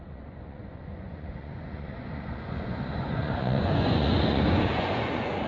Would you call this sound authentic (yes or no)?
no